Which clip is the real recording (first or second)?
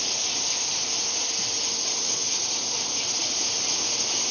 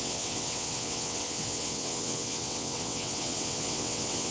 first